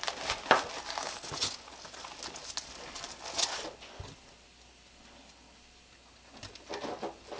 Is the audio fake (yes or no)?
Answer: no